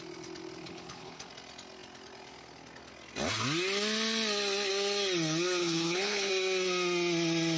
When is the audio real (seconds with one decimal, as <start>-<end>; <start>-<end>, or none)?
0.0-0.6; 1.3-5.6; 6.3-7.6